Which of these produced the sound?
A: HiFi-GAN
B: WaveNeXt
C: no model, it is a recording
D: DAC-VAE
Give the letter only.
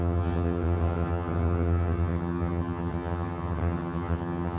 A